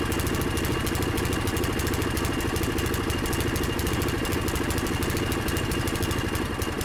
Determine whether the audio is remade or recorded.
recorded